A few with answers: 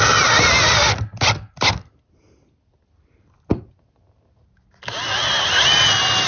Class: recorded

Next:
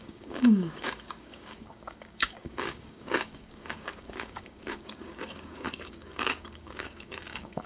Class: remade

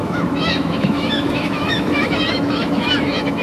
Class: remade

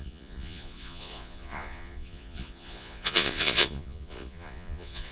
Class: remade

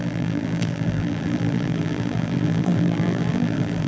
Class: remade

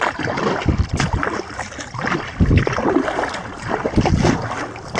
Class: recorded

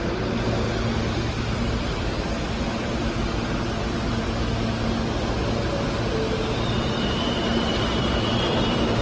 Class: recorded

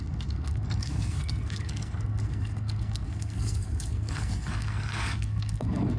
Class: remade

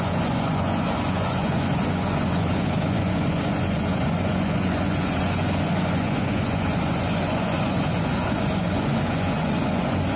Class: remade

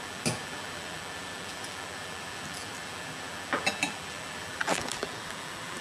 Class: remade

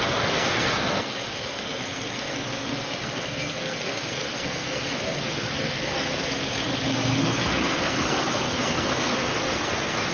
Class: remade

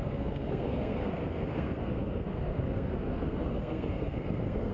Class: remade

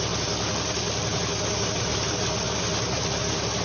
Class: recorded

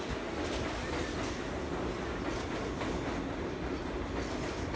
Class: recorded